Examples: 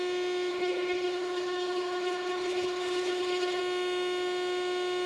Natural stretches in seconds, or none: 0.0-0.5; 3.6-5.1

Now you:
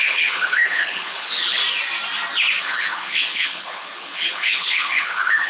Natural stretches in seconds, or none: 1.6-2.6

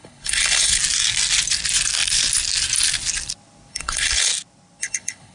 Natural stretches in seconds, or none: 0.8-3.7; 4.3-4.8

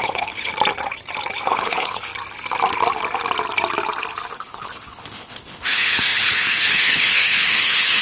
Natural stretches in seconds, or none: 0.5-1.5; 2.1-4.3